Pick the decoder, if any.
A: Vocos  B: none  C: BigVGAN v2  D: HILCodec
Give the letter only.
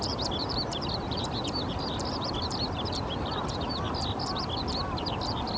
C